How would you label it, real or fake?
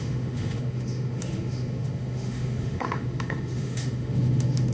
fake